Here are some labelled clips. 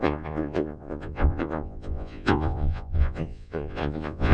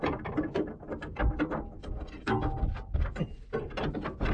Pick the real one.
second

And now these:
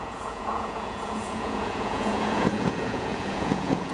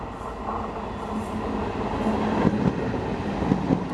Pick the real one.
second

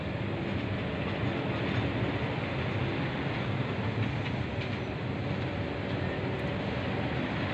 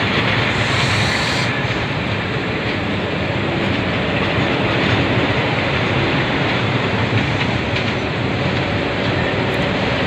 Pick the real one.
first